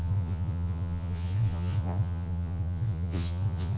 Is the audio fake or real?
fake